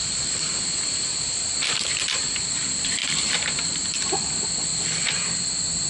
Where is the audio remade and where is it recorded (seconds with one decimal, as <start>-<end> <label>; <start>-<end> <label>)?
0.0-1.4 remade; 1.4-3.0 recorded; 3.0-4.1 remade; 4.1-5.9 recorded